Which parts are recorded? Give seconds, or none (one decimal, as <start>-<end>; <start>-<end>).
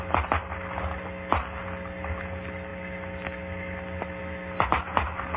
0.0-5.4